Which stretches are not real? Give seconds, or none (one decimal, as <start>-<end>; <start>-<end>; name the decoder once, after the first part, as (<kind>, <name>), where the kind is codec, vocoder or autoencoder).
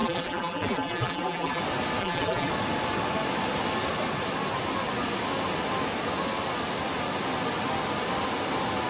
0.0-1.6 (vocoder, BigVGAN v2); 2.0-2.5